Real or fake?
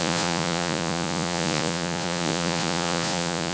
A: fake